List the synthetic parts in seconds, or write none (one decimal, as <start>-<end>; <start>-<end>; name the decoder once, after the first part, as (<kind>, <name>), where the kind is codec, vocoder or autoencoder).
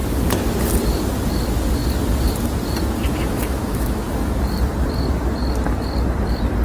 3.2-4.4 (autoencoder, DAC-VAE)